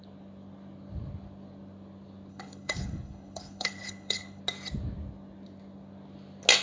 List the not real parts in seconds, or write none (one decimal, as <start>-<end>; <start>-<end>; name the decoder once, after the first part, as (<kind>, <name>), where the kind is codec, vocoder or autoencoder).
2.3-4.4 (codec, HILCodec)